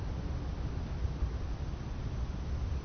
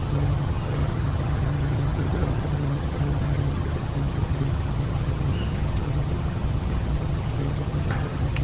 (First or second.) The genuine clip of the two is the first